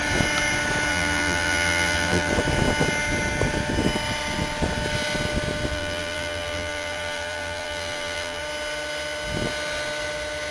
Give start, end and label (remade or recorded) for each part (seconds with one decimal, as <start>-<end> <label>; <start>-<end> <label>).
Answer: 0.0-0.9 recorded; 0.9-2.3 remade; 2.3-5.7 recorded; 5.7-8.4 remade; 8.4-10.5 recorded